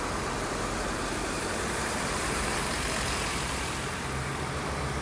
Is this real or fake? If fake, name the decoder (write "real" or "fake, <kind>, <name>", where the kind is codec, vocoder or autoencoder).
fake, vocoder, BigVGAN v2